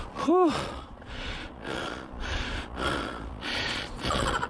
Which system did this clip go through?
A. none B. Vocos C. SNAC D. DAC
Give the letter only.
B